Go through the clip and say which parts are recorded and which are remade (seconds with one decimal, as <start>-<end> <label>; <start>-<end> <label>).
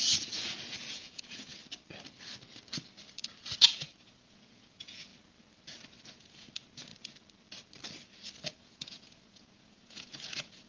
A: 0.0-1.5 remade; 1.5-3.6 recorded; 3.6-5.1 remade; 5.1-6.1 recorded; 6.1-6.9 remade; 6.9-8.5 recorded; 8.5-10.7 remade